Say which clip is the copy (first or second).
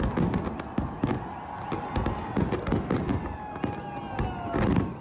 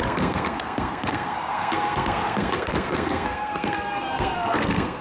second